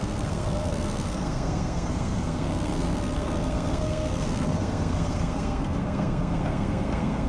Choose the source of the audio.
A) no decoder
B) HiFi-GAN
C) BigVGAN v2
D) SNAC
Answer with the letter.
D